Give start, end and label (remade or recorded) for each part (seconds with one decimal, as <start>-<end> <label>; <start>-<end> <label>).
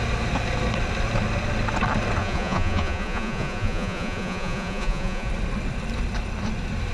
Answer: 0.0-2.2 recorded; 2.2-5.3 remade; 5.3-6.9 recorded